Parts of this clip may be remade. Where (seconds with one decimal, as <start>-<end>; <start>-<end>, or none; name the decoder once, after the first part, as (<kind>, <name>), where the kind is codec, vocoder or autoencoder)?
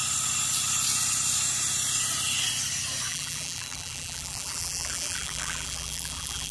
3.1-6.5 (vocoder, BigVGAN v2)